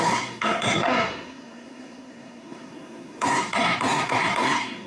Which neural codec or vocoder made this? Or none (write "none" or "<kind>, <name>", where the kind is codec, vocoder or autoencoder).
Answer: codec, SNAC